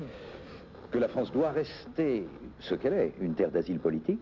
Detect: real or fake real